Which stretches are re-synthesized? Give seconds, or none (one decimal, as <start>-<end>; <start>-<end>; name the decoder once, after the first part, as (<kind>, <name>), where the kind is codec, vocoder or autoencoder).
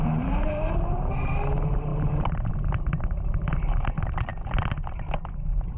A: 0.0-4.3 (vocoder, BigVGAN v2)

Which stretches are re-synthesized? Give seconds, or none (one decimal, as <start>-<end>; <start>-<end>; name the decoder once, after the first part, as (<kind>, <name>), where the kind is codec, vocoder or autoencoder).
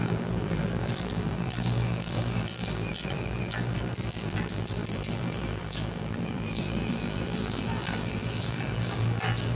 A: 0.0-9.6 (vocoder, BigVGAN v2)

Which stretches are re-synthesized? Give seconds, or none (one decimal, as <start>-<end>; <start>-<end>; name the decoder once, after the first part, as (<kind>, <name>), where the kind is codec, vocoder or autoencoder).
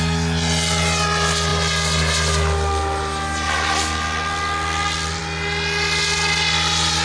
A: none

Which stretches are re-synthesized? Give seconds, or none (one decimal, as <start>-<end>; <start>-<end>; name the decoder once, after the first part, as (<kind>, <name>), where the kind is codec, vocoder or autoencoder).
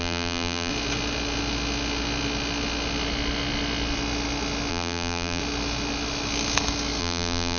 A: 0.0-0.7 (vocoder, BigVGAN v2); 4.7-5.4; 7.0-7.6